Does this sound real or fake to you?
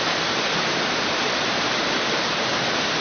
real